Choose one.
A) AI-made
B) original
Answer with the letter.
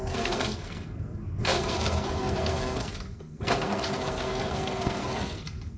A